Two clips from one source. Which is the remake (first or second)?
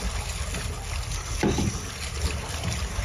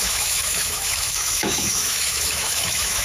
second